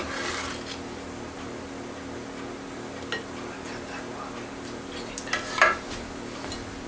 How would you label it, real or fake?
real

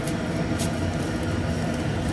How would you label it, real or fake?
real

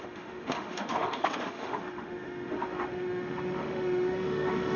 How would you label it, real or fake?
fake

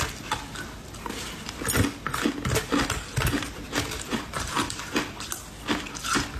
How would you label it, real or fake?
real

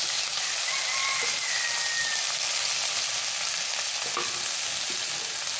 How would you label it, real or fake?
real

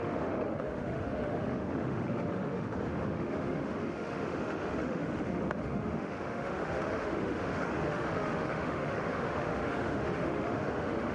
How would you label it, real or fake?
fake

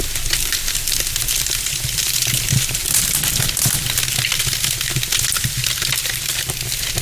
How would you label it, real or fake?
real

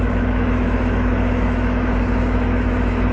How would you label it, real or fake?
fake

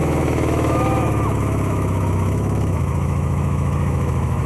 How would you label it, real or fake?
fake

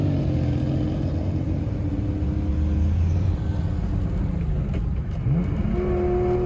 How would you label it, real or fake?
real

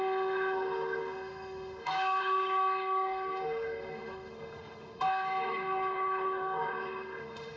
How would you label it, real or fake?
fake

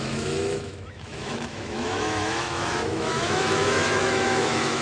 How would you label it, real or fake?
fake